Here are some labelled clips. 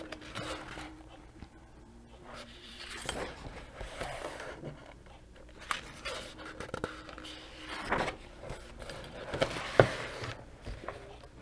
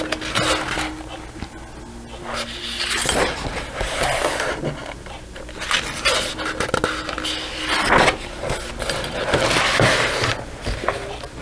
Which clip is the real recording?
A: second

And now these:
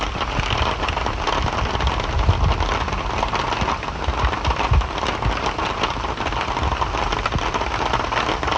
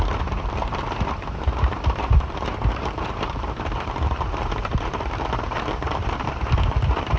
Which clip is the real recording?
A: first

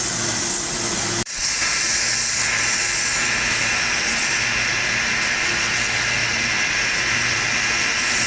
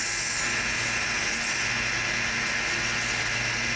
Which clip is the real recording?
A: second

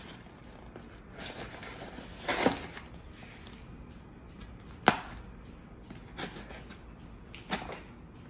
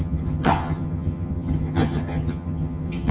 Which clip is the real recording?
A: first